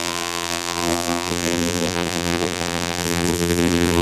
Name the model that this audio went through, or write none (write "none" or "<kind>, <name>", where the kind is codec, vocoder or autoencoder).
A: vocoder, BigVGAN v2